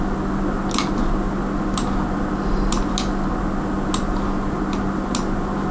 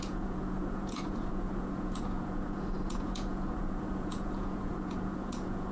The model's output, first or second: second